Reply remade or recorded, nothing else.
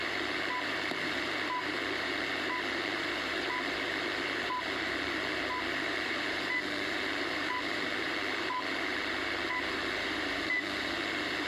remade